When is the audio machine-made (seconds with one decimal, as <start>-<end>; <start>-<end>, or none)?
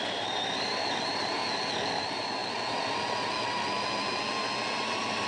0.0-1.4; 2.0-2.4; 4.7-5.3